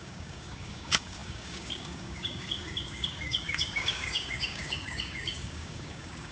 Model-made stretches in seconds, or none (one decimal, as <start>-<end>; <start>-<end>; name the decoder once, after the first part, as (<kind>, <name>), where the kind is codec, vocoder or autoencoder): 0.0-6.3 (codec, DAC)